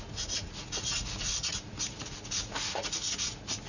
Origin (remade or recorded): remade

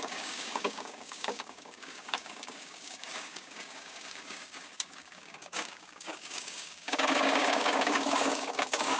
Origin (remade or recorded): remade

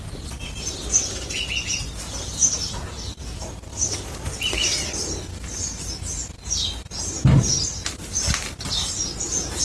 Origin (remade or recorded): recorded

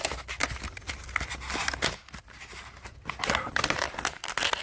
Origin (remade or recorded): recorded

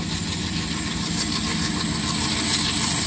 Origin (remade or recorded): recorded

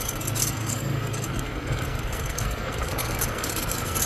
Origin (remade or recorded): remade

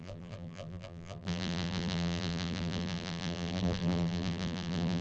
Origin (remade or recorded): remade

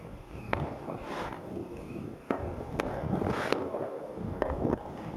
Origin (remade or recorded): remade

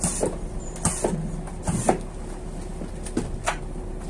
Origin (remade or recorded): recorded